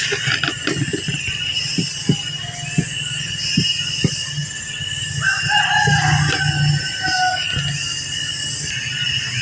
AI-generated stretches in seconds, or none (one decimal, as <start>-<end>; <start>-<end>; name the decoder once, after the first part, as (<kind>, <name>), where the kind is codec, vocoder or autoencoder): 0.9-1.6 (vocoder, BigVGAN v2)